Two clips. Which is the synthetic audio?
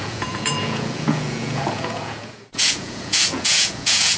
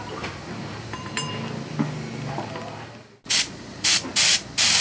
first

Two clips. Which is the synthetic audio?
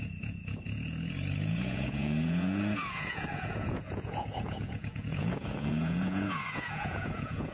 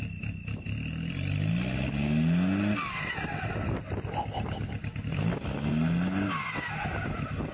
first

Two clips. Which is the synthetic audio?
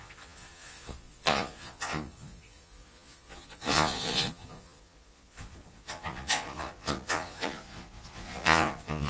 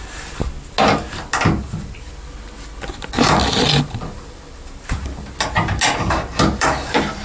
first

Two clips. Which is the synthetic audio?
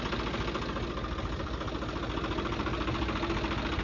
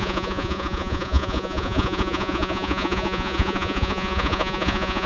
second